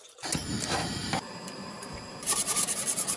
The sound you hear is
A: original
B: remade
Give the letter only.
B